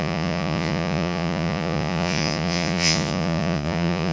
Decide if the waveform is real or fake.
fake